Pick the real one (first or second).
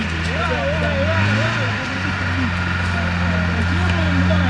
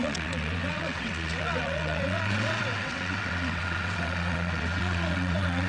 first